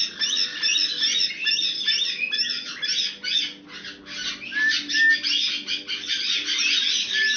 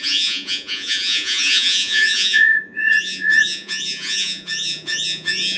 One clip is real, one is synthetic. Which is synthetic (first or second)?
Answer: second